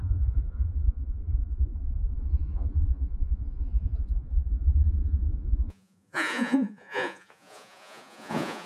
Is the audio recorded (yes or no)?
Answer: no